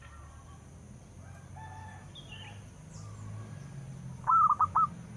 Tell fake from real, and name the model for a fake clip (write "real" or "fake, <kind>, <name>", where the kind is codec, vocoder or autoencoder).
real